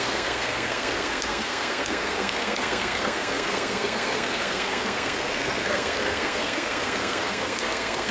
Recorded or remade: remade